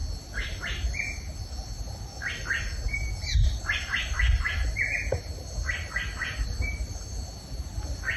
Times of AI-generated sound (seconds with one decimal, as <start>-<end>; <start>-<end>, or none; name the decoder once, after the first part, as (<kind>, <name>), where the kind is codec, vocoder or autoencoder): none